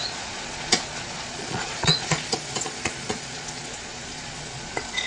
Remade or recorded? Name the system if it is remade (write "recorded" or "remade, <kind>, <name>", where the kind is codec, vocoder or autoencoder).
remade, vocoder, Vocos